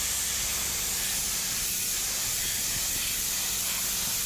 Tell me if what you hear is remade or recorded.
recorded